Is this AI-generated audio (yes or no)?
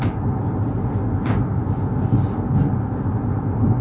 no